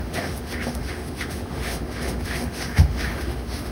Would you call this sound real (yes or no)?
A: no